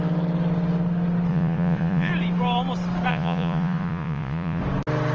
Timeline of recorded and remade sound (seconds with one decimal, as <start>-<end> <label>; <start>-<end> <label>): 0.0-1.3 recorded; 1.3-2.1 remade; 2.1-3.1 recorded; 3.1-4.6 remade; 4.6-5.1 recorded